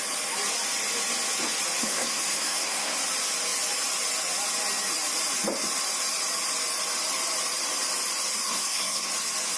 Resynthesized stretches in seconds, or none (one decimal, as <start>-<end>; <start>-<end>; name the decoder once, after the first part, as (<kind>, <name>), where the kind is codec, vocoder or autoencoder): 1.8-3.0 (codec, SNAC); 8.5-9.1